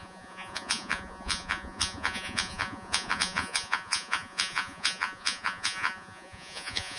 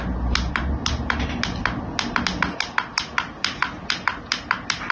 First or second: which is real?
second